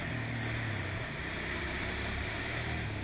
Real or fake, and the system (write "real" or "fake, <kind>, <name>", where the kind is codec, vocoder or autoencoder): real